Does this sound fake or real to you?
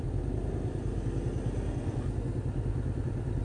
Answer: real